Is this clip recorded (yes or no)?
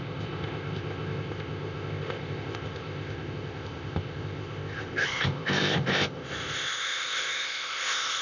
no